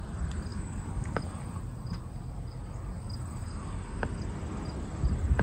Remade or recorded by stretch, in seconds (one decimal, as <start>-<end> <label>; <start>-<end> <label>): 0.0-0.5 recorded; 0.5-1.2 remade; 1.2-5.4 recorded